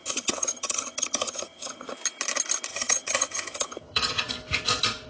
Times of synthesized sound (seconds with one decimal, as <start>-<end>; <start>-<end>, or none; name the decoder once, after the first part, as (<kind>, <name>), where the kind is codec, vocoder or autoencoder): 0.0-1.9 (vocoder, HiFi-GAN); 2.7-4.3